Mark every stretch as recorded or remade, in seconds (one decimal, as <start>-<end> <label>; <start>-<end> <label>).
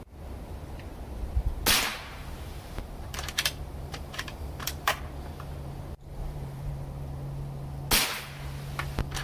0.0-1.9 recorded; 1.9-5.0 remade; 5.0-6.1 recorded; 6.1-6.7 remade; 6.7-9.2 recorded